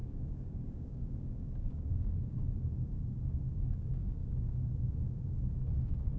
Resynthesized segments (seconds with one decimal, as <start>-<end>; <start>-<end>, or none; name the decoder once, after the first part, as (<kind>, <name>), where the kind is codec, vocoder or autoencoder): 0.0-2.4 (codec, DAC); 3.3-6.2